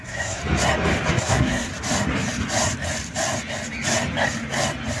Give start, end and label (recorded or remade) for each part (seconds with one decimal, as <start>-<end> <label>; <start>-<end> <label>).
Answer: 0.0-0.4 remade; 0.4-1.1 recorded; 1.1-1.7 remade; 1.7-5.0 recorded